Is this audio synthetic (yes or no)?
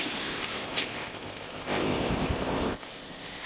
yes